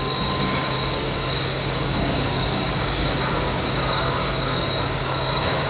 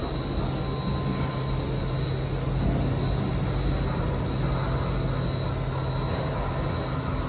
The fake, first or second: first